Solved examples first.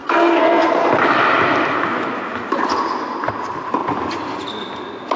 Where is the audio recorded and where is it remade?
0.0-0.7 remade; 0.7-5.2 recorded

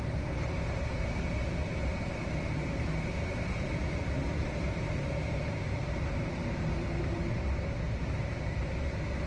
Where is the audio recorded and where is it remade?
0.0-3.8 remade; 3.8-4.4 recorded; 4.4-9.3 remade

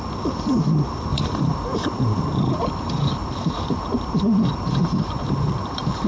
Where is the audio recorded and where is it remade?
0.0-1.1 recorded; 1.1-2.6 remade; 2.6-3.2 recorded; 3.2-3.8 remade; 3.8-4.8 recorded; 4.8-6.1 remade

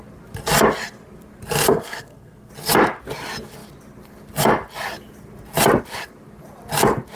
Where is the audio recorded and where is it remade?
0.0-1.7 recorded; 1.7-2.5 remade; 2.5-7.2 recorded

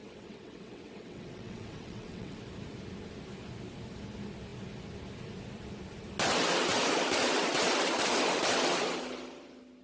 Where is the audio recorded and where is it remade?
0.0-2.4 remade; 2.4-9.8 recorded

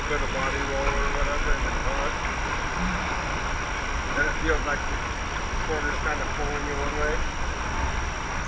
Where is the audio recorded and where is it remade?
0.0-8.5 recorded

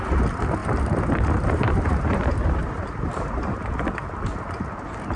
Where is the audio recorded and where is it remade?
0.0-0.6 recorded; 0.6-3.7 remade; 3.7-5.2 recorded